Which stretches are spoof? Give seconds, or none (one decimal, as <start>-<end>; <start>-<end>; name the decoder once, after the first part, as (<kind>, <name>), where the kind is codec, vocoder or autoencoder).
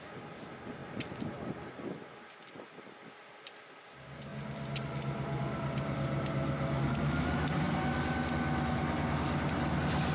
none